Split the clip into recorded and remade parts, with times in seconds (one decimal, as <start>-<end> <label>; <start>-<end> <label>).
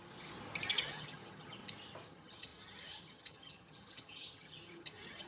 0.0-0.7 recorded; 0.7-1.6 remade; 1.6-2.1 recorded; 2.1-5.3 remade